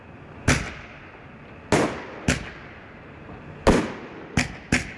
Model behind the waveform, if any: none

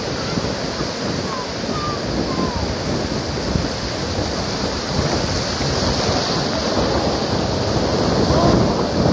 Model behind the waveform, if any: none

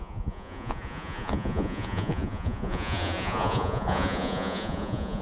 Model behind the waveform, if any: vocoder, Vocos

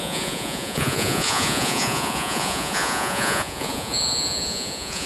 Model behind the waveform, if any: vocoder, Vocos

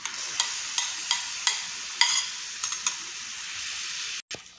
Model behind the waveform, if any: none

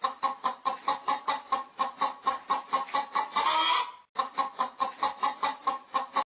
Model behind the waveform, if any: none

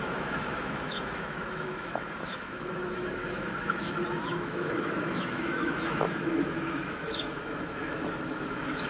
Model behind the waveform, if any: autoencoder, DAC-VAE